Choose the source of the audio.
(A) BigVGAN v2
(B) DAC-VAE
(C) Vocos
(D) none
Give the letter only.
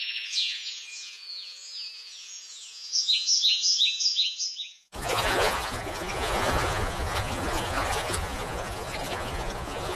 C